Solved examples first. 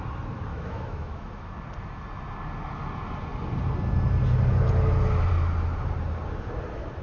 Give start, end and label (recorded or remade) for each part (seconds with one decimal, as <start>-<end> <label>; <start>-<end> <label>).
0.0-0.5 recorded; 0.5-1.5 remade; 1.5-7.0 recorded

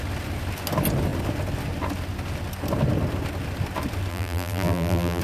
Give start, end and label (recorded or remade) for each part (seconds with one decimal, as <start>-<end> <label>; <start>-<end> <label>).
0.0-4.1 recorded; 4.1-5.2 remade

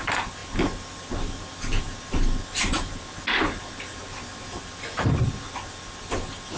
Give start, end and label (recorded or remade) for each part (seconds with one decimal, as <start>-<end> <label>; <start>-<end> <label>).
0.0-6.6 recorded

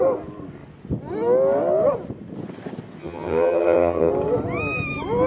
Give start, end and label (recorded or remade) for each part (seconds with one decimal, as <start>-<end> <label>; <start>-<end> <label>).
0.0-3.0 recorded; 3.0-4.1 remade; 4.1-5.3 recorded

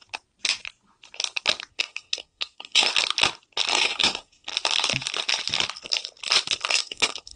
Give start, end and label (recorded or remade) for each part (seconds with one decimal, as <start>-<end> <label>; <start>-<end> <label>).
0.0-1.7 recorded; 1.7-2.9 remade; 2.9-3.7 recorded; 3.7-4.5 remade; 4.5-6.7 recorded; 6.7-7.4 remade